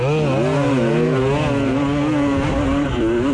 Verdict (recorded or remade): recorded